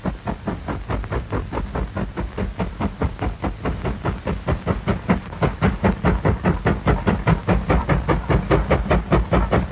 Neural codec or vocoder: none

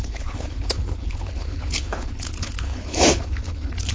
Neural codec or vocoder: codec, HILCodec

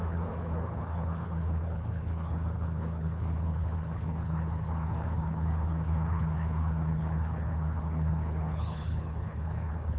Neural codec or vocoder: codec, HILCodec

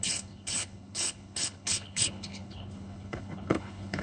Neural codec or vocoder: codec, HILCodec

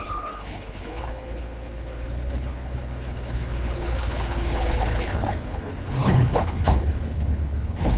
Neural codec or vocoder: codec, HILCodec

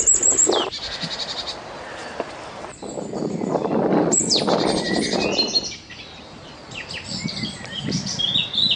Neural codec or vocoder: none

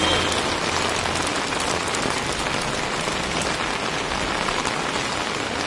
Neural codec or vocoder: none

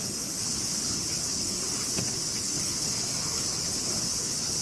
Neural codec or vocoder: codec, HILCodec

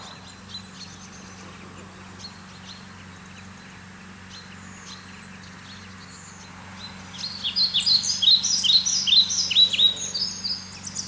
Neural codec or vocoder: none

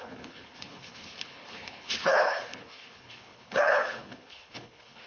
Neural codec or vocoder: codec, HILCodec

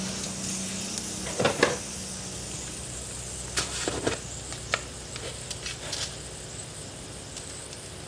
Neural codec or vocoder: none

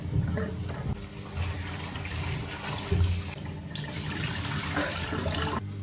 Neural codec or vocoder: none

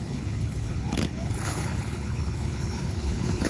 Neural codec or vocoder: codec, HILCodec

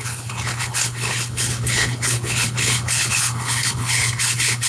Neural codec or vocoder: codec, HILCodec